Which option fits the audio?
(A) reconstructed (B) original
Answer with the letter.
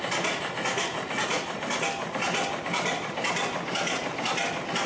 B